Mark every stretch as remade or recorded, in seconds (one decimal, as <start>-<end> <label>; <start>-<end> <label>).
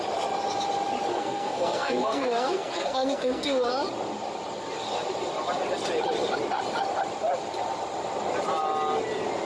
0.0-1.1 recorded; 1.1-3.7 remade; 3.7-9.4 recorded